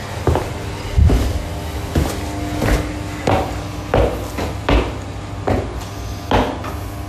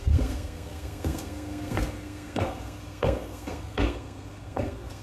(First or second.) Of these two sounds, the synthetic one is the second